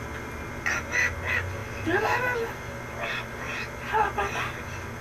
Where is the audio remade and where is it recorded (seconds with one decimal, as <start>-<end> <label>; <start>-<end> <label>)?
0.0-5.0 recorded